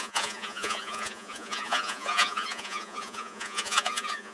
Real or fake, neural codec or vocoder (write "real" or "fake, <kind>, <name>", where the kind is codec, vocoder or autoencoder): fake, vocoder, Vocos